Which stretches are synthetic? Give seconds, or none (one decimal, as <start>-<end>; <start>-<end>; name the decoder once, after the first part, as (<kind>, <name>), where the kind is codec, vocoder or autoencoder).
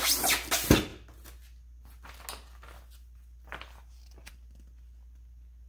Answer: none